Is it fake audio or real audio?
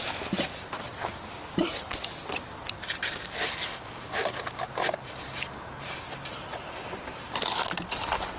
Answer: real